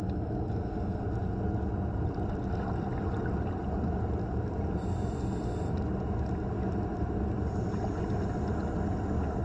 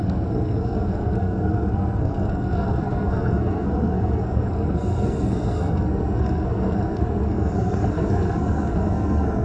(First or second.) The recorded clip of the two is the first